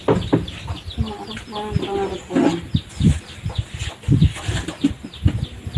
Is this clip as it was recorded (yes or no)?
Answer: yes